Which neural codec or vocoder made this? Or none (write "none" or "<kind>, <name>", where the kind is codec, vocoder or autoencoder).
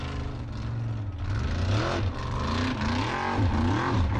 none